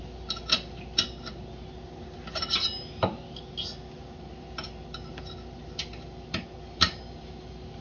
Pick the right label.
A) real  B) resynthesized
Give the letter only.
A